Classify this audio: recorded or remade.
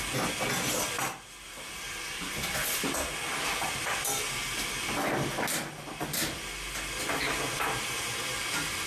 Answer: recorded